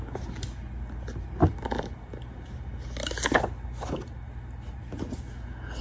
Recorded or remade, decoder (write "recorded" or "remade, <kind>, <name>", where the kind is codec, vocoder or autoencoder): recorded